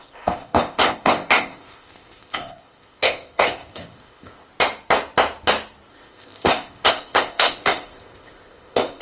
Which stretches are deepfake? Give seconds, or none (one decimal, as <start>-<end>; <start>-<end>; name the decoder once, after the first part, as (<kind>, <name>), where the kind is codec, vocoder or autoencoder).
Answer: 0.0-4.5 (codec, ZipCodec); 5.9-9.0